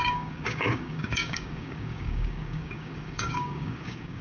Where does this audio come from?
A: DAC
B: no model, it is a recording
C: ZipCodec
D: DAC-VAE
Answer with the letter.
A